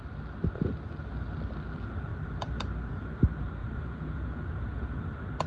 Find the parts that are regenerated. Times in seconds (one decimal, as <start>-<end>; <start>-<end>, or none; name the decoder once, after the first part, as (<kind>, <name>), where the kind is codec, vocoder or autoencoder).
3.6-5.0 (vocoder, Vocos)